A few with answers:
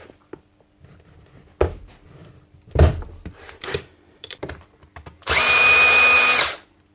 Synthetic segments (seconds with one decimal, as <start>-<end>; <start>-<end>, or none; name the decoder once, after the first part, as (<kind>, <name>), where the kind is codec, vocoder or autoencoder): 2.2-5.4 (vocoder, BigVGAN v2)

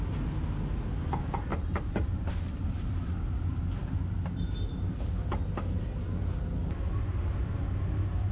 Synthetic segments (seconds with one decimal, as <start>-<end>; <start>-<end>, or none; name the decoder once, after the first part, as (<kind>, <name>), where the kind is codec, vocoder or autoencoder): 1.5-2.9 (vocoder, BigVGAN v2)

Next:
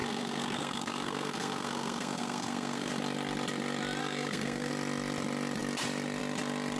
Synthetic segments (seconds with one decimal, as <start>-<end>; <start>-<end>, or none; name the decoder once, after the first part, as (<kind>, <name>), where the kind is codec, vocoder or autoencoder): 0.0-2.9 (codec, SNAC); 4.0-4.7

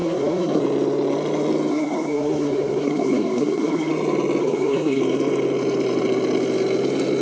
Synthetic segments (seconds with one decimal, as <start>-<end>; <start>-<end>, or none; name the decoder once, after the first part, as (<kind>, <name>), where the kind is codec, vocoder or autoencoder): 0.0-0.6 (codec, SNAC); 1.7-3.9; 4.4-5.0

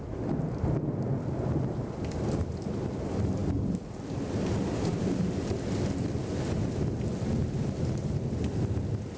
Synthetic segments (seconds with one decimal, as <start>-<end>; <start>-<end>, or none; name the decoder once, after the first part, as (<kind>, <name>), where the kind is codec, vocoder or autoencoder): none

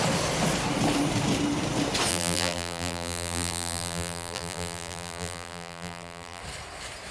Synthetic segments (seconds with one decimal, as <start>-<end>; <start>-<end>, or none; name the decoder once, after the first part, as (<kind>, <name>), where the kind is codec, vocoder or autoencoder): 2.1-6.4 (vocoder, BigVGAN v2)

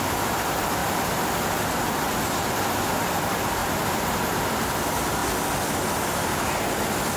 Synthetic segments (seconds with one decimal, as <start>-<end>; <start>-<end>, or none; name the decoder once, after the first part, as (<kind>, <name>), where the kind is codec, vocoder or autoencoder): none